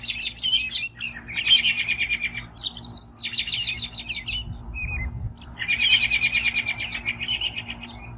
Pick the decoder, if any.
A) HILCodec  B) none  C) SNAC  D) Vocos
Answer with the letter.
B